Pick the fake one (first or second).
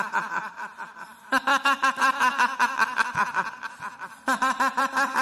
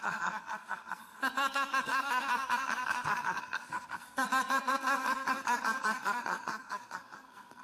second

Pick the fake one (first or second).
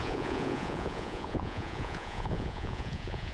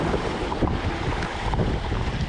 first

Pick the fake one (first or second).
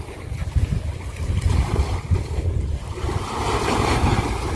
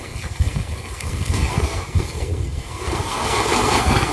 second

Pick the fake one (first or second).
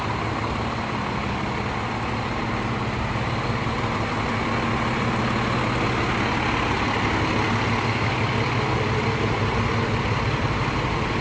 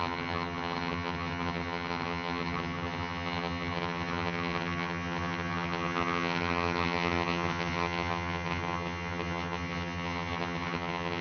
second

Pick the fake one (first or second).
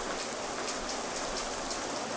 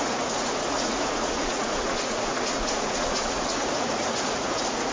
second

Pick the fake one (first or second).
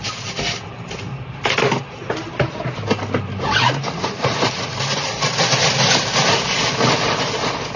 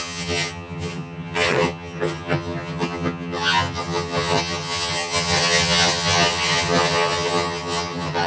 second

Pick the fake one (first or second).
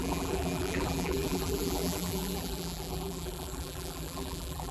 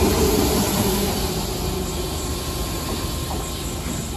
first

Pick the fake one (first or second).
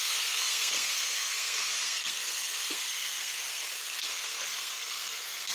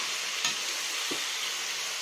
first